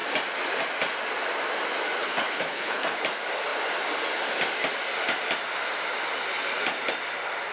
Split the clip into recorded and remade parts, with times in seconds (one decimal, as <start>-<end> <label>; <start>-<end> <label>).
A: 0.0-2.0 recorded; 2.0-3.0 remade; 3.0-7.5 recorded